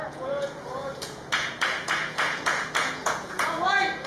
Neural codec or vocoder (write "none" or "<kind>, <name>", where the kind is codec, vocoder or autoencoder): vocoder, Vocos